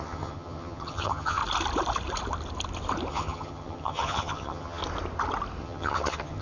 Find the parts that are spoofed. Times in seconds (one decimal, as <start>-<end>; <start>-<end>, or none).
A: 0.0-1.4; 3.1-4.8; 5.6-6.4